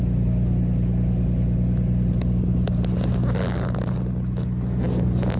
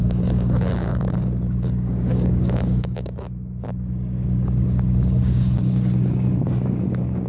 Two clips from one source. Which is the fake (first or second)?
second